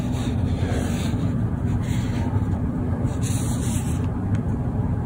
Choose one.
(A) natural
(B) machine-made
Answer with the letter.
A